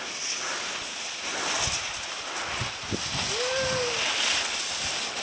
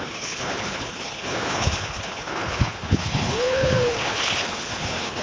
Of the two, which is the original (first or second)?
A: first